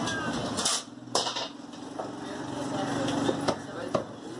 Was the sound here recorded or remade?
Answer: recorded